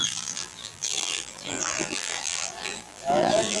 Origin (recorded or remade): remade